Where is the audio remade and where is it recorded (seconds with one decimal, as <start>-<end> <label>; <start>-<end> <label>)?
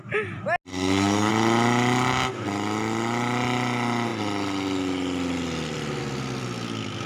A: 0.0-0.7 recorded; 0.7-1.3 remade; 1.3-7.1 recorded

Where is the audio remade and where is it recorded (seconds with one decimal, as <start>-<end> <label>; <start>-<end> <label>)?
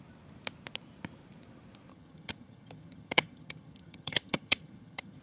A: 0.0-1.9 recorded; 1.9-5.2 remade